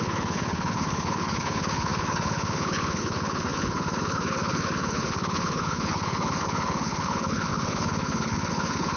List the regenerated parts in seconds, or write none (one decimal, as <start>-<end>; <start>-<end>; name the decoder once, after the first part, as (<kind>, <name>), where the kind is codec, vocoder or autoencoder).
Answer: 0.0-9.0 (codec, HILCodec)